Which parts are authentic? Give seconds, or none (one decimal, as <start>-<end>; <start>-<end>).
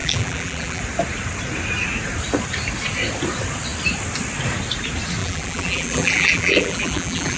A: 0.8-5.2